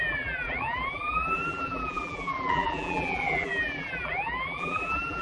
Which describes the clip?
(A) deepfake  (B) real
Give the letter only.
A